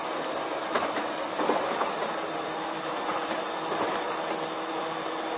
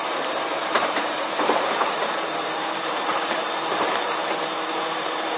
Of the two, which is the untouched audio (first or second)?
first